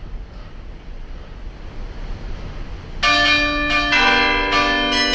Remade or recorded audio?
recorded